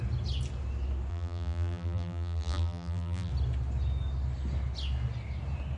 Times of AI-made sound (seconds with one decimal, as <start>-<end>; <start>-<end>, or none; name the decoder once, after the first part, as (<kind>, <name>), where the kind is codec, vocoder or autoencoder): 1.1-3.3 (vocoder, BigVGAN v2)